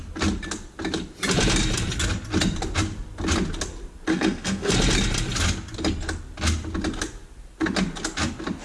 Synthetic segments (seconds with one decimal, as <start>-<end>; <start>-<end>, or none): 4.1-4.7